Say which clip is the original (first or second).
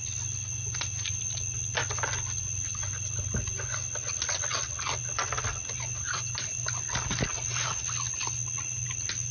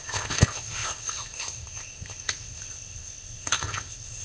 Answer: first